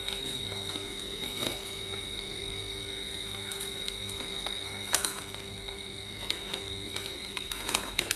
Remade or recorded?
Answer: remade